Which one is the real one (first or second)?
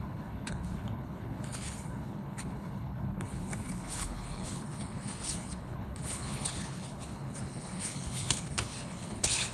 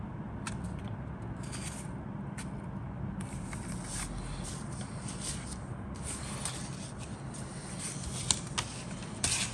second